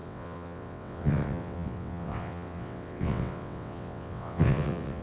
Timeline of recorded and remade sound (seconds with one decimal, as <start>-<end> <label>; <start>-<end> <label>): 0.0-5.0 remade